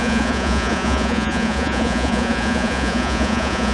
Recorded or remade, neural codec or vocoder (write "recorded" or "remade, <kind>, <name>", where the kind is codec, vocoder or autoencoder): remade, vocoder, Vocos